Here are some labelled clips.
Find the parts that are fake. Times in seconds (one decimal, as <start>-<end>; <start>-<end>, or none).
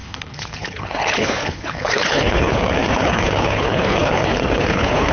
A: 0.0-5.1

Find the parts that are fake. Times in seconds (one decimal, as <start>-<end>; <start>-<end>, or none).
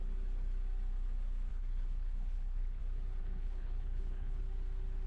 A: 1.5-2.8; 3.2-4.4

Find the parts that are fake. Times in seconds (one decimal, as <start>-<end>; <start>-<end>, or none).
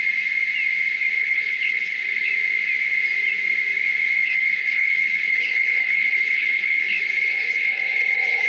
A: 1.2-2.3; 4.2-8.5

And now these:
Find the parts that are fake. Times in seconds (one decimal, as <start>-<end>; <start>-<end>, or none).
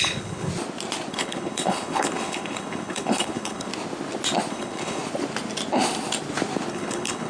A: 0.0-0.5; 1.1-3.7; 4.5-5.0; 6.7-7.3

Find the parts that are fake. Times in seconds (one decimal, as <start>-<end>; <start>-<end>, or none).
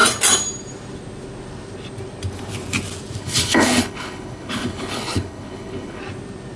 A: 3.2-6.0